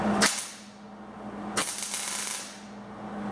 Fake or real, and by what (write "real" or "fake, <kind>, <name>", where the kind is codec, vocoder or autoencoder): real